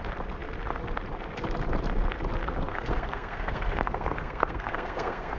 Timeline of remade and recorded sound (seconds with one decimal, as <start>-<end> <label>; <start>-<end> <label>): 0.0-2.7 recorded; 2.7-5.4 remade